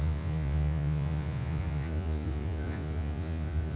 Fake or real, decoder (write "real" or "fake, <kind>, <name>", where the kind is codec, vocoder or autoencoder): fake, vocoder, Vocos